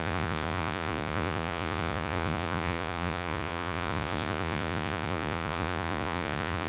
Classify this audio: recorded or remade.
remade